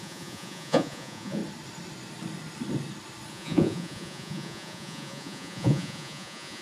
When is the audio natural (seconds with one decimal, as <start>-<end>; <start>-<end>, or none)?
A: 1.4-3.3